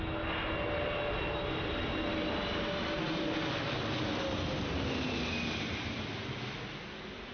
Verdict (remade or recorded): recorded